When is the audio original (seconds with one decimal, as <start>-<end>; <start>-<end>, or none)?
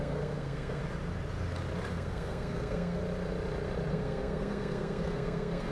0.8-1.9; 3.0-3.9